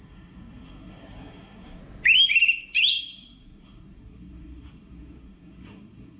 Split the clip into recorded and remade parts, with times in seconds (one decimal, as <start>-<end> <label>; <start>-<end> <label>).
0.0-1.8 remade; 1.8-2.9 recorded; 2.9-6.2 remade